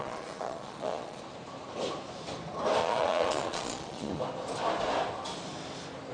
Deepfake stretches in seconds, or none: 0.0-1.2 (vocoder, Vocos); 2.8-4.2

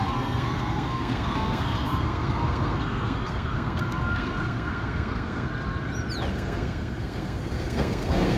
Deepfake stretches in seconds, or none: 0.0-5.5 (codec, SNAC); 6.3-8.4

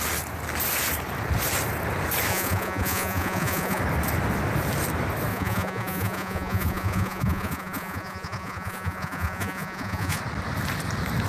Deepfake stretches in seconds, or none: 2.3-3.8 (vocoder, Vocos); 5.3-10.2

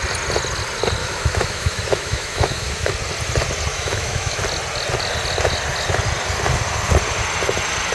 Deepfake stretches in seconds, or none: 1.0-2.9 (autoencoder, DAC-VAE); 3.7-4.4

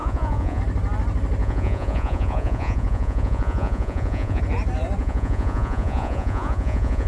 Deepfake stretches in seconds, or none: 0.0-0.6 (vocoder, Vocos); 1.4-4.4; 5.0-7.1

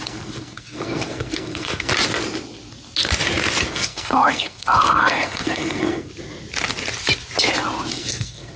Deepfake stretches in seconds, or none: 0.0-1.9 (codec, SNAC); 3.7-6.1; 7.9-8.6

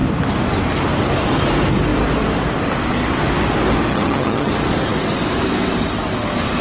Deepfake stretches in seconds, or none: 3.9-4.5 (vocoder, HiFi-GAN)